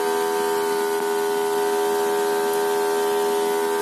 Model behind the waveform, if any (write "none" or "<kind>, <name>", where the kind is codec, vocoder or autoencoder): none